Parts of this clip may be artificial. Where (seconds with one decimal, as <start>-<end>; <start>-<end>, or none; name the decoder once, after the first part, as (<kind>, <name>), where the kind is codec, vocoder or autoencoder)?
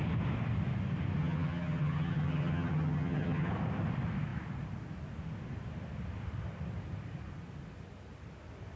1.2-3.5 (vocoder, HiFi-GAN)